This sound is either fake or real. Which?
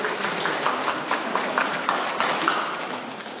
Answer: fake